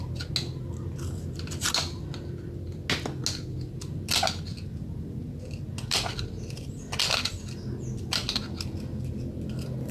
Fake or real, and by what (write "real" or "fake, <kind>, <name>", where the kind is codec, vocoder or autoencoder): real